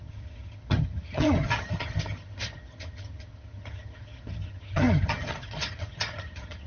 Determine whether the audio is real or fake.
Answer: fake